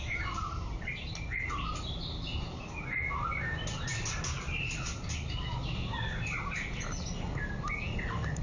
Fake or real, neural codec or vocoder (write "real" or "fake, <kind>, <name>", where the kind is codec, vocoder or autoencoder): real